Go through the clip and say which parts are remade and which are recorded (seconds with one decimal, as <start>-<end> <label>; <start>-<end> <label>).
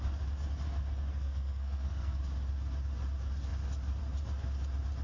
0.0-1.1 recorded; 1.1-2.2 remade; 2.2-5.0 recorded